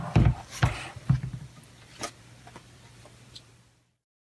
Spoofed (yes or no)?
yes